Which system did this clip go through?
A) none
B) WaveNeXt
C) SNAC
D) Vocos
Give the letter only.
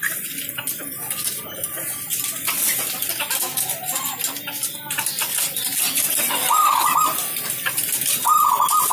A